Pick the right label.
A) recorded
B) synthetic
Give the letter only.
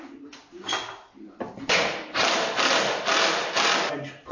A